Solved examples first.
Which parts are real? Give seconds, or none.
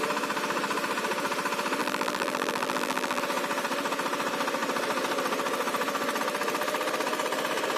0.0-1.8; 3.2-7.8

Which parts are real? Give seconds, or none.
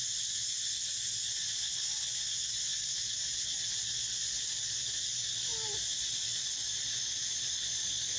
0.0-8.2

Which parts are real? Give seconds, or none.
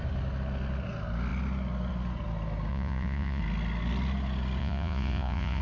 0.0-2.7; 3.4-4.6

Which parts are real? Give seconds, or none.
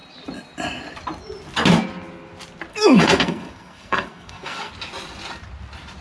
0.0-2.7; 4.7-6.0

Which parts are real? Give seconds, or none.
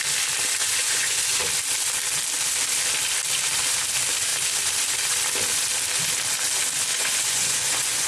0.0-0.6; 1.4-6.9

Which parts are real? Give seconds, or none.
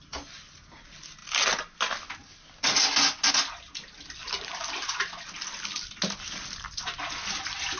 0.0-7.8